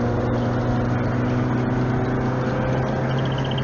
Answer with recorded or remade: recorded